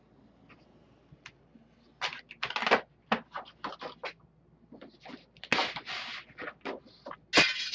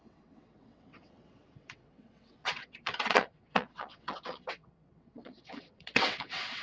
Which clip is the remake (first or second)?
second